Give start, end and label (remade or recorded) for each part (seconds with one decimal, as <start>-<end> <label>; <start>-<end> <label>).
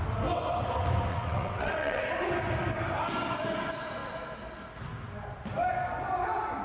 0.0-1.1 recorded; 1.1-2.0 remade; 2.0-6.6 recorded